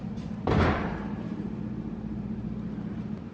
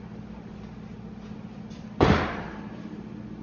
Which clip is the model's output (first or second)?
first